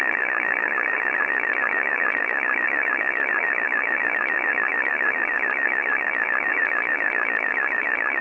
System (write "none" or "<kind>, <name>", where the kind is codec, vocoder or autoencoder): vocoder, Vocos